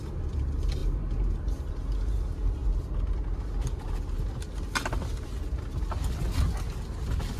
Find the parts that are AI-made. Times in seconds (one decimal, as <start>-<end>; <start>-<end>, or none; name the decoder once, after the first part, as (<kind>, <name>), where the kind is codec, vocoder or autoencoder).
none